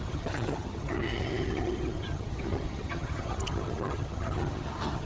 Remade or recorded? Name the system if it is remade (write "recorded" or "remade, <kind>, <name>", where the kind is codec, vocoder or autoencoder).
remade, vocoder, HiFi-GAN